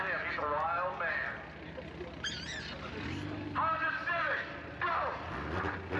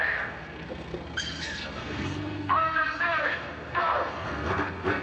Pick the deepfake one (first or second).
second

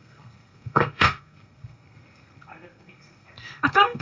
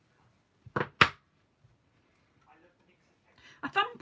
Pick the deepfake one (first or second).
first